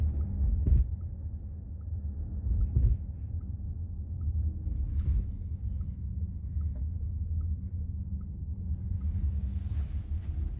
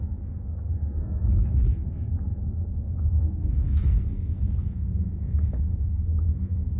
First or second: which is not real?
second